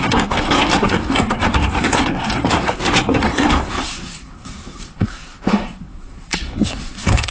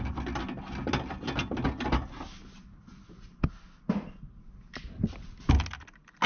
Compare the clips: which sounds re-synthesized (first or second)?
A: first